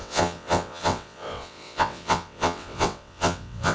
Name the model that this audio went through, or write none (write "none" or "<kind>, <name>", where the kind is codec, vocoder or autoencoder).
vocoder, WaveNeXt